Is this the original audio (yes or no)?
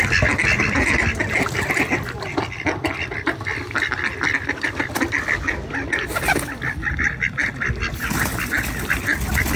yes